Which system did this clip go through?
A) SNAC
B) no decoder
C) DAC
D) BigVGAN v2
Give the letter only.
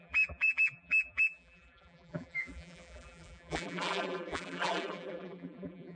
D